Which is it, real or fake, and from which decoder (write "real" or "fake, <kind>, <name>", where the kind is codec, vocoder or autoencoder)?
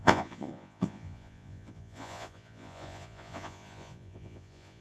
fake, vocoder, Vocos